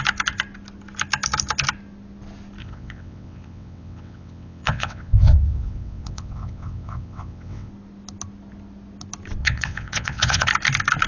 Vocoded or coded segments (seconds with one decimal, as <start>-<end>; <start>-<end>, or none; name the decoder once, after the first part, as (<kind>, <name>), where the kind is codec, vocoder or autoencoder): 2.6-7.7 (vocoder, WaveNeXt); 9.4-10.5